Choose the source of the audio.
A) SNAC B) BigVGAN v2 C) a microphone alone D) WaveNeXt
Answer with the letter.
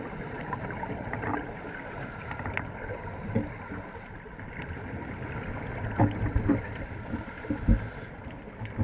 B